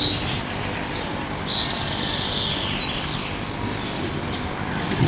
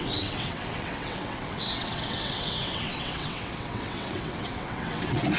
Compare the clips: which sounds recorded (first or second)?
first